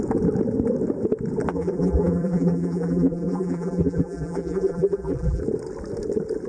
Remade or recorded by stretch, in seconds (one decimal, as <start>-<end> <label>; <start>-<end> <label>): 0.0-1.5 recorded; 1.5-5.4 remade; 5.4-6.5 recorded